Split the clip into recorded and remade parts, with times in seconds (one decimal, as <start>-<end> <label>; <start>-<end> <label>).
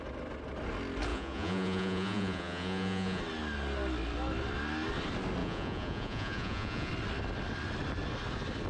0.0-1.1 recorded; 1.1-3.2 remade; 3.2-5.4 recorded; 5.4-6.9 remade; 6.9-8.7 recorded